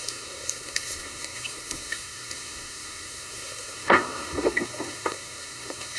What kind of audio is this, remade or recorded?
remade